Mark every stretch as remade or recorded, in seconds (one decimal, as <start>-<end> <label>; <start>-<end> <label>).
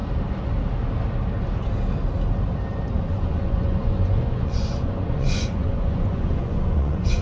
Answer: 0.0-3.0 recorded; 3.0-7.2 remade